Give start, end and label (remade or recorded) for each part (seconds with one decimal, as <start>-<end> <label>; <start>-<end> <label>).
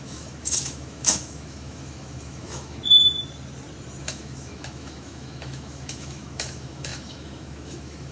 0.0-2.8 remade; 2.8-4.0 recorded; 4.0-8.1 remade